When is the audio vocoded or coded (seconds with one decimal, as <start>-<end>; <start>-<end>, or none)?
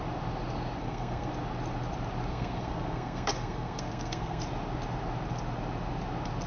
0.8-1.3; 2.3-4.4